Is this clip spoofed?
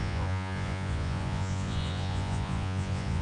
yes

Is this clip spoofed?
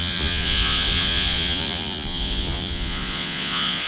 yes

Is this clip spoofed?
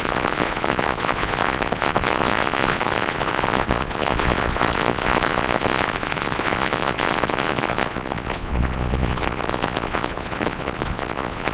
yes